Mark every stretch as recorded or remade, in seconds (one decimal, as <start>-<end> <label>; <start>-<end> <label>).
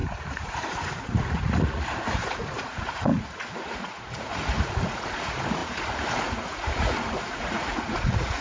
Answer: 0.0-8.4 remade